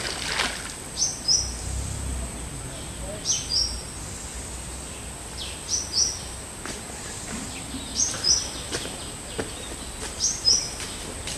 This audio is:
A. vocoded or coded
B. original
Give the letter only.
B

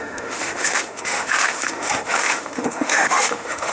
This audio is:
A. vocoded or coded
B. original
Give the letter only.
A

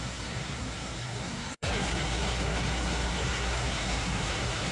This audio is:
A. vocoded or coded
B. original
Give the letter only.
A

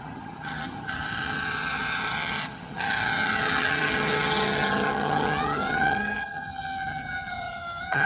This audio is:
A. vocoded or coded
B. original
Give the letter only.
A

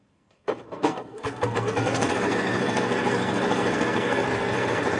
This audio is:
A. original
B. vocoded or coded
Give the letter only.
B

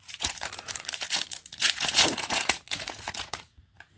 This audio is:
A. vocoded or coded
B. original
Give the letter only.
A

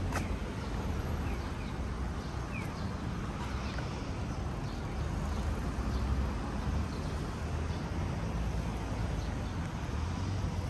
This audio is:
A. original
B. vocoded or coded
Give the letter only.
A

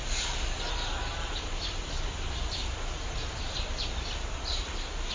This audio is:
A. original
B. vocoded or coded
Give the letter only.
B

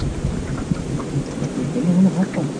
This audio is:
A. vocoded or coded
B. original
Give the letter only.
B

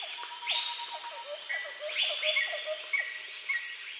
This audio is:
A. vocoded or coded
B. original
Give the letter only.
B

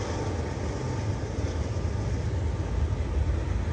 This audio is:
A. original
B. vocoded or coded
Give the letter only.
A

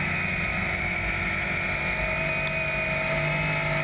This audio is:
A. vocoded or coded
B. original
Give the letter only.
B